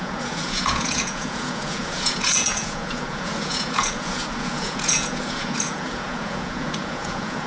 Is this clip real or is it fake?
fake